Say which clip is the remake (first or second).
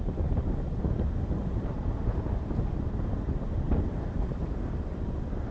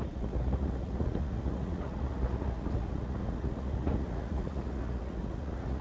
second